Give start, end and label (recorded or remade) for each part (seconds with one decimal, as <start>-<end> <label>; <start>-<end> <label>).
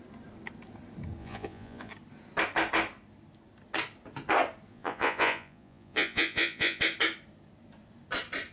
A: 0.0-1.2 recorded; 1.2-1.9 remade; 1.9-4.7 recorded; 4.7-6.8 remade; 6.8-8.5 recorded